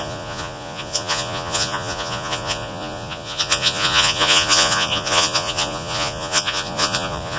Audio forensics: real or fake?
fake